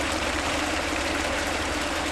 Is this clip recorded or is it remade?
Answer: remade